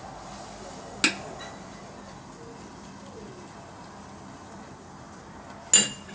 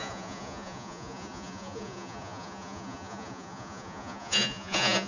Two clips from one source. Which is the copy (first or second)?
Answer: second